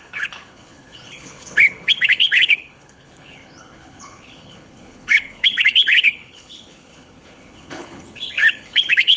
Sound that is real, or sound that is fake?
fake